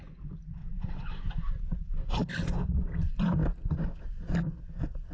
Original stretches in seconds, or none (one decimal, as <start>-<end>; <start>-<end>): 0.0-0.6; 1.3-5.1